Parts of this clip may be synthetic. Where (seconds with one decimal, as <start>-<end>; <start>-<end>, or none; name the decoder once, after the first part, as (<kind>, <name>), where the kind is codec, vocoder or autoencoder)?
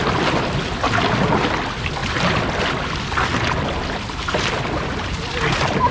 none